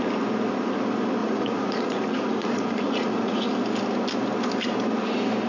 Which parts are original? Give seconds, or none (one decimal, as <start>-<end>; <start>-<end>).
0.0-1.2; 3.5-5.5

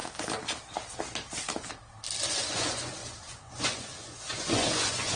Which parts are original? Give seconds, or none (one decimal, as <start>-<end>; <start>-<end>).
0.0-2.2

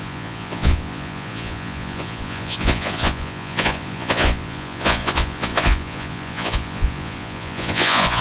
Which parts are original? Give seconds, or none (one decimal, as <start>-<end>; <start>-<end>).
none